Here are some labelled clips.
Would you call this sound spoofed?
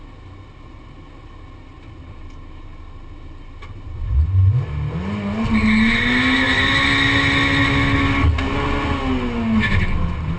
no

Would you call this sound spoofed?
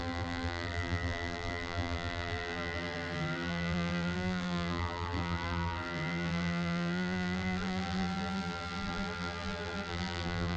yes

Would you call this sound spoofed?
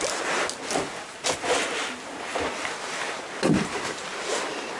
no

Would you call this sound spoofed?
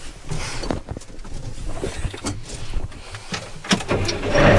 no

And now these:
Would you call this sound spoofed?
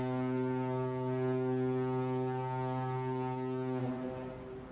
no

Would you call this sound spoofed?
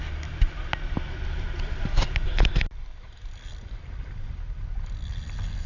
yes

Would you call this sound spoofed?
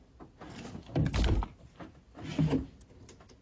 no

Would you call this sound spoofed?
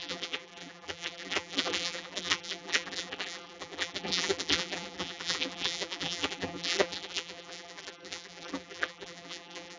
yes